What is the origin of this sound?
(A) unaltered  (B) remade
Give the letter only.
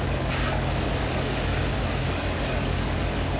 B